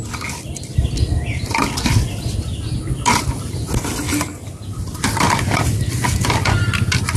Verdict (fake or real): real